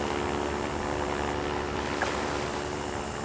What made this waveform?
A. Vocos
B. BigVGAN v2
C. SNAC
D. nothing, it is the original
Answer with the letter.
D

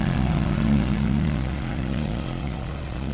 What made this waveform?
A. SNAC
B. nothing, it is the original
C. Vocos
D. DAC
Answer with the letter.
C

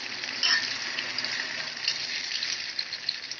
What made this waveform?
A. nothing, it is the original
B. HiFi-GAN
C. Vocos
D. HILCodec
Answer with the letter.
A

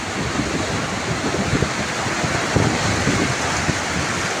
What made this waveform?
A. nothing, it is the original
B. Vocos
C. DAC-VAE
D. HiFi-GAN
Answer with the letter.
A